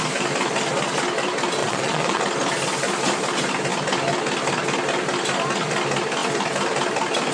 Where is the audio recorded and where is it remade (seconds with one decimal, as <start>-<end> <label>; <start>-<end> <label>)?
0.0-1.6 recorded; 1.6-2.2 remade; 2.2-7.3 recorded